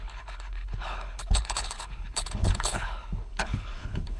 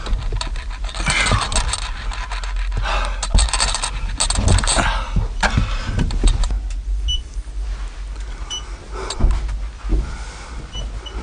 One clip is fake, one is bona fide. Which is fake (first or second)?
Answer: first